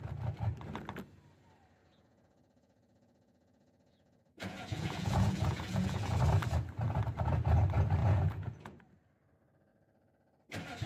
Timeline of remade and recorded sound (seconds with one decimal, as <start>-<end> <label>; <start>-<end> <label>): 0.0-1.8 recorded; 1.8-6.2 remade; 6.2-8.0 recorded; 8.0-8.8 remade; 8.8-10.9 recorded